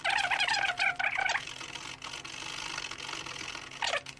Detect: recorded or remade recorded